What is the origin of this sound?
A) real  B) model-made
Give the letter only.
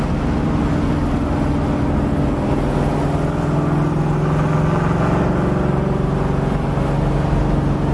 A